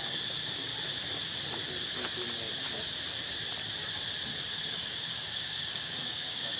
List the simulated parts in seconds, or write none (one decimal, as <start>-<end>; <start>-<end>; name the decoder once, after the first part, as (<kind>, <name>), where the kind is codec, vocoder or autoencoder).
0.0-0.7 (codec, DAC); 4.7-6.6